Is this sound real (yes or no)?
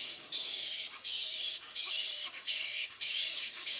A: no